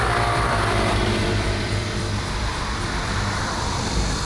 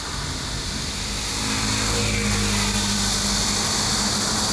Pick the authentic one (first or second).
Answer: second